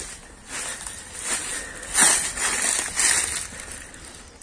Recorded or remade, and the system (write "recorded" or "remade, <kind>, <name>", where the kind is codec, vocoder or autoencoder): recorded